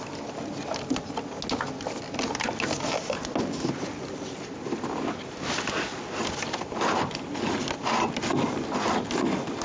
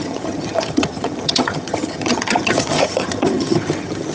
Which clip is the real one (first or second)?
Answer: first